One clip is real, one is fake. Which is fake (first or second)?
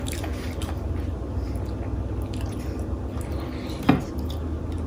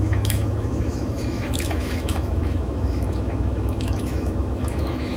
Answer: second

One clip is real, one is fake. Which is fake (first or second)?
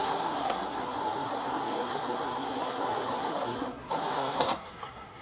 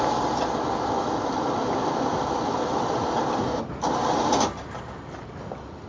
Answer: first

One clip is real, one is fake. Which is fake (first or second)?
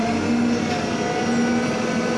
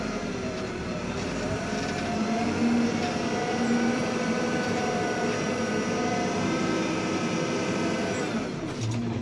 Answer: second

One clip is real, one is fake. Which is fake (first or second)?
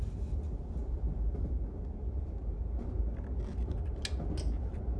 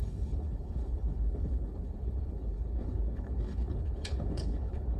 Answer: second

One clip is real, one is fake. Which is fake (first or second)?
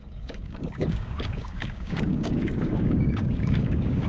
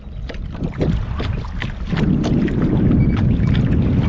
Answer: first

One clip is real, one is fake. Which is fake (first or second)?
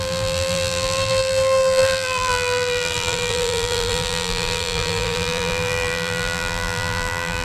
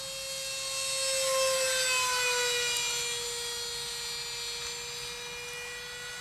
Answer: first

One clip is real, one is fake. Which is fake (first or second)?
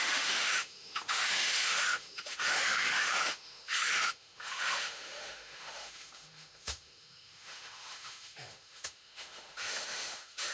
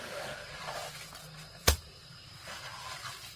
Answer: first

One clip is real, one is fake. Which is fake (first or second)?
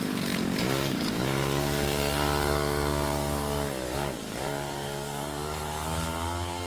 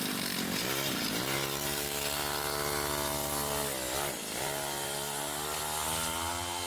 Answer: first